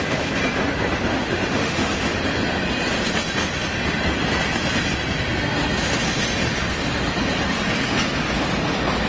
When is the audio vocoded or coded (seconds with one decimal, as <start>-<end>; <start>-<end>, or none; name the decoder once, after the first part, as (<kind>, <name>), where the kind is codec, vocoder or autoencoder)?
1.1-2.2 (autoencoder, DAC-VAE)